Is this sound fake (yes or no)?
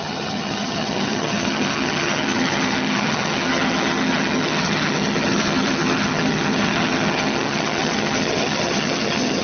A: yes